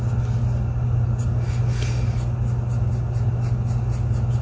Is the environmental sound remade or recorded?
recorded